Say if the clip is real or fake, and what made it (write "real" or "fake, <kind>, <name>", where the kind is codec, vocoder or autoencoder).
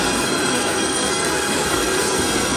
fake, codec, SNAC